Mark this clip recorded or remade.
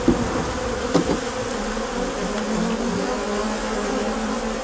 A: recorded